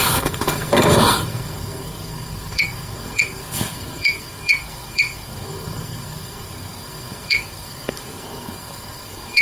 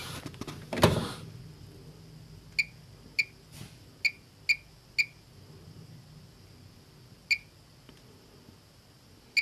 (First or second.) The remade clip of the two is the first